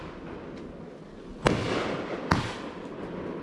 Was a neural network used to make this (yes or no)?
no